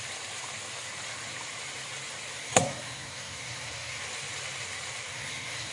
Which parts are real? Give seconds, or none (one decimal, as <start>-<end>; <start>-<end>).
0.0-2.4; 4.0-5.1